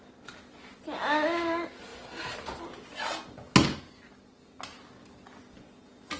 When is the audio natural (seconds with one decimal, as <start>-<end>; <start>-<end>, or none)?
0.0-6.2